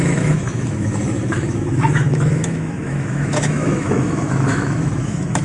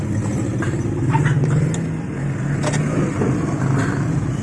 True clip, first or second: second